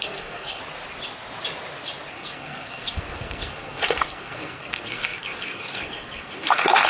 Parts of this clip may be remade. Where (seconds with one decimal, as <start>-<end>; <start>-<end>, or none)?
0.0-0.6; 2.1-6.9